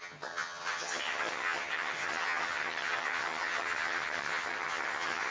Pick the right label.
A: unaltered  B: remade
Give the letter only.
B